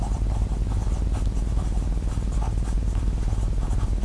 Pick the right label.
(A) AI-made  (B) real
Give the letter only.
B